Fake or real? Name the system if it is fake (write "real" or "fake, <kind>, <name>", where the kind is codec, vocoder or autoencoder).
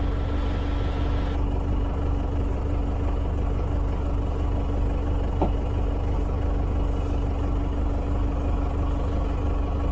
real